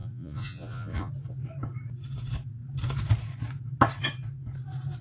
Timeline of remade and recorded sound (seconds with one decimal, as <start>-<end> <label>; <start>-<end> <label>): 0.0-1.1 remade; 1.1-5.0 recorded